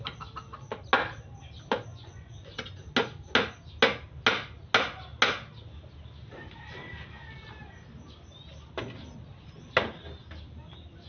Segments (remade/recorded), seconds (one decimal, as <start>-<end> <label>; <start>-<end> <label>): 0.0-1.9 recorded; 1.9-2.6 remade; 2.6-11.1 recorded